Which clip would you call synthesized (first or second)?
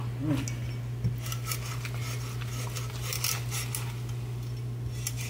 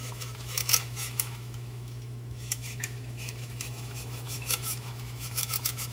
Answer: second